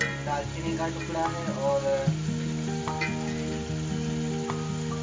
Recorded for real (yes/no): yes